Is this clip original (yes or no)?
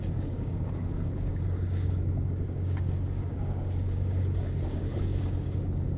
no